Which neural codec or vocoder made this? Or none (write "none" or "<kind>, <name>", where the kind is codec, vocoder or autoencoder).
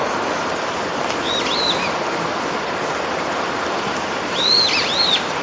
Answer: none